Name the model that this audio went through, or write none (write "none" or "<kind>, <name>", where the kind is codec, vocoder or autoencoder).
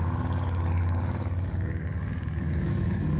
codec, DAC